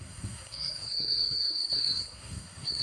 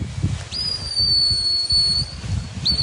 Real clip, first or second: second